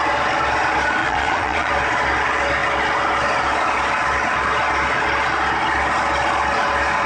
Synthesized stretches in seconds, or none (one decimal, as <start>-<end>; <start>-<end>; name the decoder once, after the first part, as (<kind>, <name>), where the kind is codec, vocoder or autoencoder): 1.0-1.7 (vocoder, Vocos)

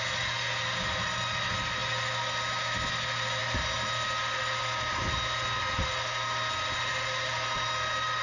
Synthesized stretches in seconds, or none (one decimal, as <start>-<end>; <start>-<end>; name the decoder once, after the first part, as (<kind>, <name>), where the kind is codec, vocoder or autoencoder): none

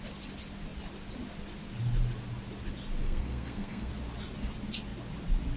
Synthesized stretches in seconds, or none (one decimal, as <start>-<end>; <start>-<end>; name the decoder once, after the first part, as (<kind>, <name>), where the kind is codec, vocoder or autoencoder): 3.0-3.9 (codec, SNAC)

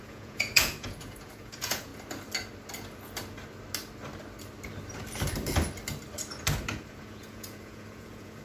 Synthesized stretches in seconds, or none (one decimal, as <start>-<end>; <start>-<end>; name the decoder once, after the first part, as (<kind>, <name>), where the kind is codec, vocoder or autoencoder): 0.0-1.9 (vocoder, Vocos); 6.9-8.4

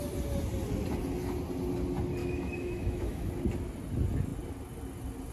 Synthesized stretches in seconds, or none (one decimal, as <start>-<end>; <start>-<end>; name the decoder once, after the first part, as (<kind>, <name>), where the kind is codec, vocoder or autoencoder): 2.2-3.3 (autoencoder, DAC-VAE)

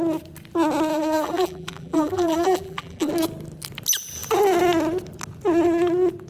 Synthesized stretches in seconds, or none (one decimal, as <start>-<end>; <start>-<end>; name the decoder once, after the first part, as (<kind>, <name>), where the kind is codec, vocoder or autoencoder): 0.9-3.1 (vocoder, BigVGAN v2)